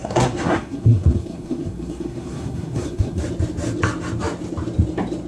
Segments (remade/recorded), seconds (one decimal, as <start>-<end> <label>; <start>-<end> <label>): 0.0-3.2 remade; 3.2-5.3 recorded